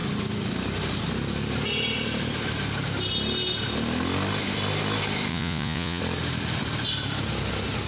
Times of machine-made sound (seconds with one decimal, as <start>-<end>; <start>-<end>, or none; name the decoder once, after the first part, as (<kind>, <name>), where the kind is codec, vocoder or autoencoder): 5.3-6.0 (vocoder, Vocos)

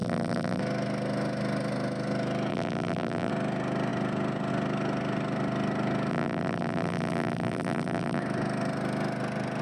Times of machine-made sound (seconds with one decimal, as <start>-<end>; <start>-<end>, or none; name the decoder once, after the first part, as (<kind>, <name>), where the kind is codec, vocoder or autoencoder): 0.0-0.6 (vocoder, BigVGAN v2); 2.5-3.3; 6.1-8.2